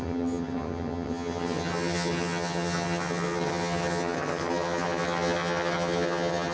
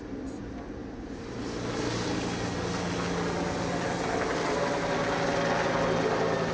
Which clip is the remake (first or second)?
first